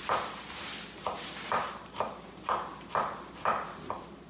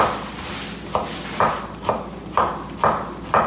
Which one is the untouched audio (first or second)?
second